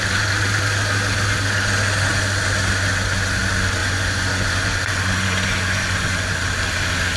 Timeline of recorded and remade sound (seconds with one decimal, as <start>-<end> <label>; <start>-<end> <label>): 0.0-3.8 recorded; 3.8-6.3 remade; 6.3-7.2 recorded